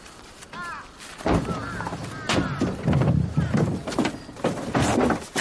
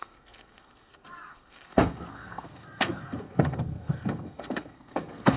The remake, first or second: second